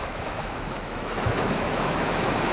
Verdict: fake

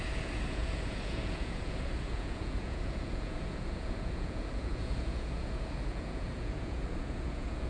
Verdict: fake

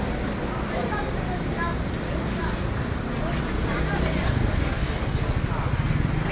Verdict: real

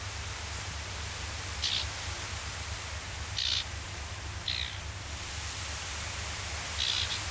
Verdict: real